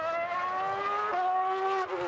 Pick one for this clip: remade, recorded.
recorded